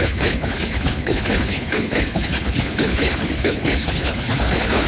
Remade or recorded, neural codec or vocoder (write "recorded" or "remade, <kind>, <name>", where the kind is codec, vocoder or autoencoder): remade, codec, HILCodec